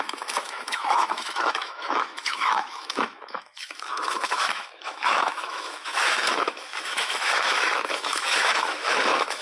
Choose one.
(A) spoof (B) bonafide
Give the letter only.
A